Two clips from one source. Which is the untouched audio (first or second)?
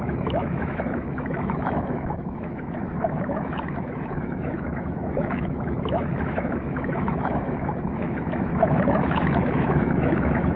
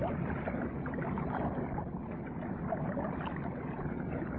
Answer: second